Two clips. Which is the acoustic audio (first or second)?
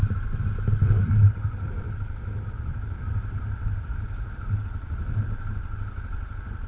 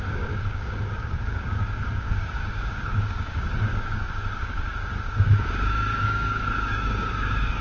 first